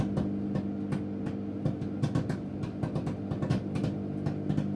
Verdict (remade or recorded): recorded